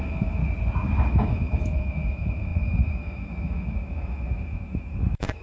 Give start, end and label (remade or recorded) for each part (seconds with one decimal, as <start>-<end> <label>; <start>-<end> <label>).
0.0-0.4 remade; 0.4-1.1 recorded; 1.1-5.4 remade